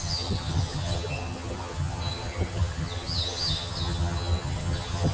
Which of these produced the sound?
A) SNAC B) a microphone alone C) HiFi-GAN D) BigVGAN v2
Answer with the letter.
C